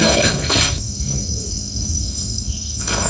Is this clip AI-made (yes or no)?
yes